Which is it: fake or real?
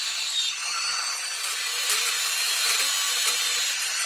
real